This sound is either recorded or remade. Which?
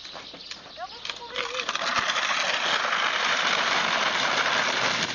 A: recorded